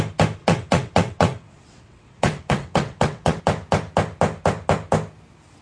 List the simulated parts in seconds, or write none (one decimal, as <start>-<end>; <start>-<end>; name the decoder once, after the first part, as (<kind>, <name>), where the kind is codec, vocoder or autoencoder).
0.4-3.4 (vocoder, WaveNeXt)